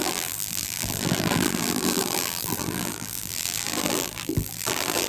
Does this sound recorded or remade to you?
remade